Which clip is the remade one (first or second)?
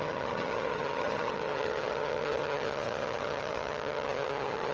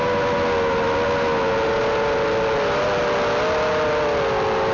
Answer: first